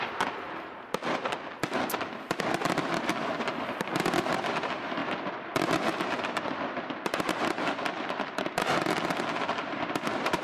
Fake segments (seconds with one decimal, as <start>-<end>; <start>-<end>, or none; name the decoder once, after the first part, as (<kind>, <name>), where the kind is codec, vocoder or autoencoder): none